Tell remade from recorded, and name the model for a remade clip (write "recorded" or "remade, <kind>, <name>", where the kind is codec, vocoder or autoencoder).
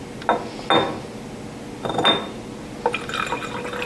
recorded